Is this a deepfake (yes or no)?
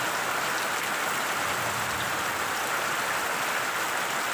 no